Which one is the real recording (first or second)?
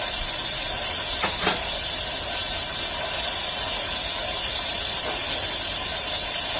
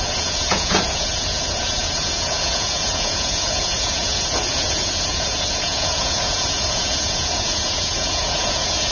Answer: first